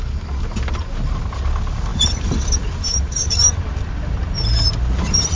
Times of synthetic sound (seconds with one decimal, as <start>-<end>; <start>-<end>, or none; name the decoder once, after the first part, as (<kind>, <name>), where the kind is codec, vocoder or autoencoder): 1.9-5.4 (vocoder, BigVGAN v2)